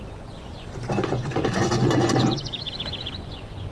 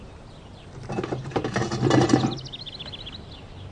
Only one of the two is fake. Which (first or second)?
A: first